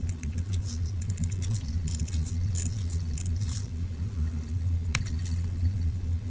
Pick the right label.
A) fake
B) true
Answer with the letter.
A